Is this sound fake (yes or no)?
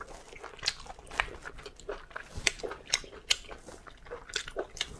no